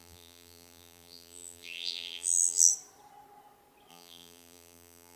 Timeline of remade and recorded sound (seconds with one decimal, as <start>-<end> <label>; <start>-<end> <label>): 0.0-2.7 remade; 2.7-3.9 recorded; 3.9-5.2 remade